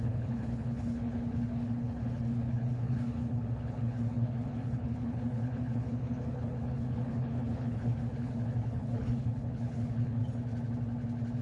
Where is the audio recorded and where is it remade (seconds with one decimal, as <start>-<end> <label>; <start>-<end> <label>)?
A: 0.0-10.2 remade; 10.2-11.4 recorded